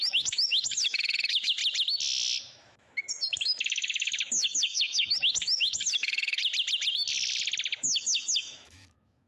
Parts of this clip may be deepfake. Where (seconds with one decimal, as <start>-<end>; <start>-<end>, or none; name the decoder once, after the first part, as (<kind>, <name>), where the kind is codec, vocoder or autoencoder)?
0.0-1.6 (autoencoder, DAC-VAE); 2.4-6.4; 7.8-9.3